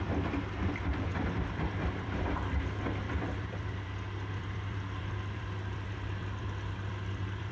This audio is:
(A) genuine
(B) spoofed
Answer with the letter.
B